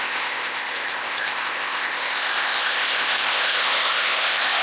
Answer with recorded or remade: remade